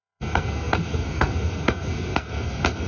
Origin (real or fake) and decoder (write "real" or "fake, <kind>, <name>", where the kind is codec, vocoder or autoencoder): fake, codec, SNAC